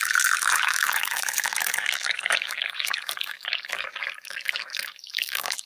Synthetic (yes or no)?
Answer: yes